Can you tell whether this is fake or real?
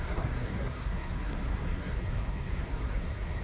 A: fake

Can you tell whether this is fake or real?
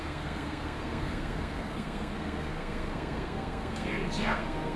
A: fake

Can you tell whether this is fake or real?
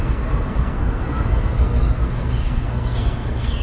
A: fake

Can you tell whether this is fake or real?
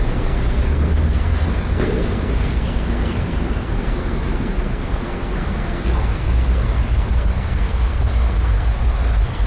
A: fake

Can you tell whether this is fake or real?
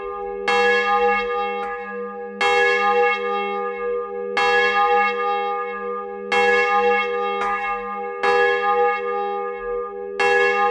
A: real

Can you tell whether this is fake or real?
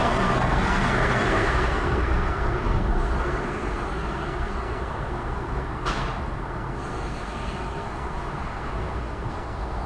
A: fake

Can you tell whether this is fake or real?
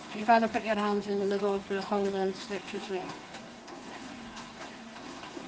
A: fake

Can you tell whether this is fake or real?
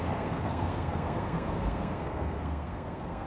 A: fake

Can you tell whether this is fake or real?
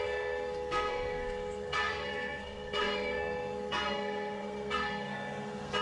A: fake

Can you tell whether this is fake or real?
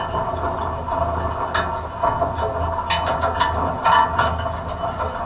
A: real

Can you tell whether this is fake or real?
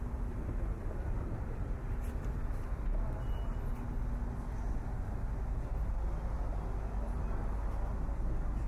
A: real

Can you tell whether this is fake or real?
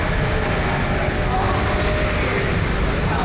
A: real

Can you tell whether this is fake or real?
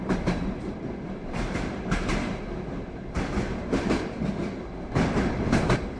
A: real